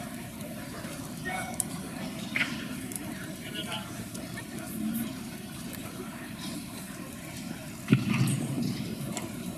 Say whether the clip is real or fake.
fake